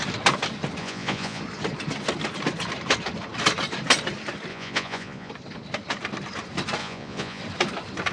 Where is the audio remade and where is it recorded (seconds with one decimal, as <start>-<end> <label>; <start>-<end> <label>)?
0.0-0.8 recorded; 0.8-1.4 remade; 1.4-4.5 recorded; 4.5-5.3 remade; 5.3-6.8 recorded; 6.8-7.4 remade; 7.4-8.1 recorded